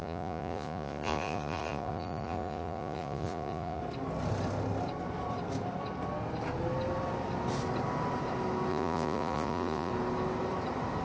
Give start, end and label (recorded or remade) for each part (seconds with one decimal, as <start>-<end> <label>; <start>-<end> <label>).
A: 0.0-3.8 remade; 3.8-8.7 recorded; 8.7-9.9 remade; 9.9-11.0 recorded